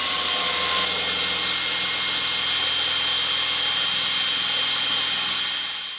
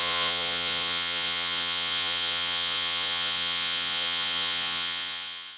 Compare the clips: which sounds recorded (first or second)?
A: first